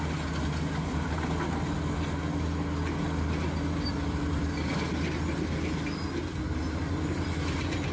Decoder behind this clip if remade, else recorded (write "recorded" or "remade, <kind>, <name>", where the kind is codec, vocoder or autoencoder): recorded